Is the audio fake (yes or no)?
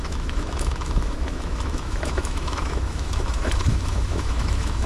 yes